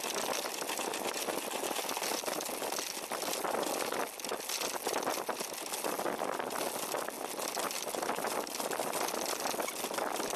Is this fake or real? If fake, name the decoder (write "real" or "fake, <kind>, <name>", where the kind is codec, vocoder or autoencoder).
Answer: real